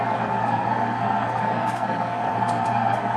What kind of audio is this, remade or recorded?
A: remade